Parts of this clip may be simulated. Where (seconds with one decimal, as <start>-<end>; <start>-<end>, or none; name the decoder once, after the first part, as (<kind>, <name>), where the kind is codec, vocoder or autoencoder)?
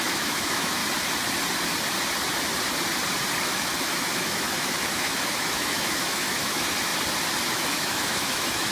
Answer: 0.0-0.8 (autoencoder, DAC-VAE); 3.4-6.9; 7.5-8.7